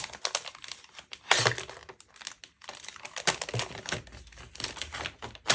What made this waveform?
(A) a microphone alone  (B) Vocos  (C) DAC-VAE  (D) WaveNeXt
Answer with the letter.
A